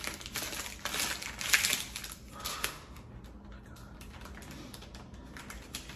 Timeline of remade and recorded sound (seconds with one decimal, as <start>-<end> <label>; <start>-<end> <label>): 0.0-2.5 recorded; 2.5-3.1 remade; 3.1-6.0 recorded